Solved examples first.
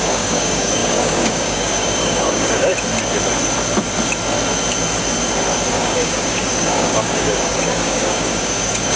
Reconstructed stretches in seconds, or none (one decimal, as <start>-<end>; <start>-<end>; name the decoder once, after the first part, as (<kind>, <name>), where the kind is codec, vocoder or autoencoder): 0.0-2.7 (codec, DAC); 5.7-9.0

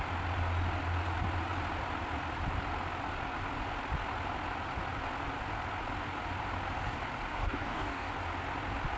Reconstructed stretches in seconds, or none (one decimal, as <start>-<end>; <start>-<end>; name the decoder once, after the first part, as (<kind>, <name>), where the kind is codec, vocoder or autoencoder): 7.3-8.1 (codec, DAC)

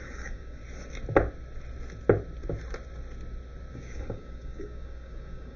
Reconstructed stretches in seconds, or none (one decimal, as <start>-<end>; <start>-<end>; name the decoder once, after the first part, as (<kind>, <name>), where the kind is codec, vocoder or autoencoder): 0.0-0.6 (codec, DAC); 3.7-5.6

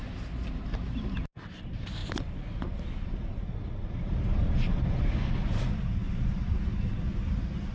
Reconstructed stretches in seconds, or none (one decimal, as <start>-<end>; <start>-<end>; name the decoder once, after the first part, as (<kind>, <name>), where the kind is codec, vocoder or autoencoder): none

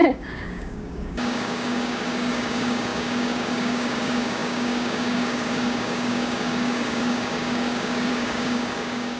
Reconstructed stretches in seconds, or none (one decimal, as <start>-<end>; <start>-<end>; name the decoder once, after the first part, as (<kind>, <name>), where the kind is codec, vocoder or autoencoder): 0.0-9.2 (codec, DAC)